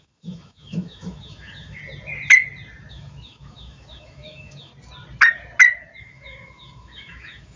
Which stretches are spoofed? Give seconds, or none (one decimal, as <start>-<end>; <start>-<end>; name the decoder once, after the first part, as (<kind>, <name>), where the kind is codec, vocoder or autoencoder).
0.0-1.8 (autoencoder, DAC-VAE); 2.9-4.7; 6.0-7.6